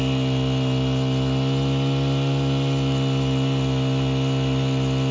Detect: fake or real real